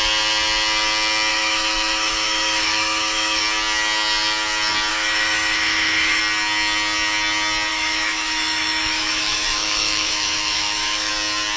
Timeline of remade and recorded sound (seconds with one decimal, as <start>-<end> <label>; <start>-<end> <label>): 0.0-1.3 recorded; 1.3-3.4 remade; 3.4-4.9 recorded; 4.9-6.2 remade; 6.2-7.7 recorded; 7.7-11.1 remade; 11.1-11.6 recorded